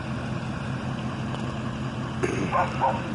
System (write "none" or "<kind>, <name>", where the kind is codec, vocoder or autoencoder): none